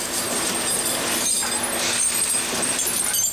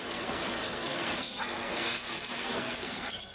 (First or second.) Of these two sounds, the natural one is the first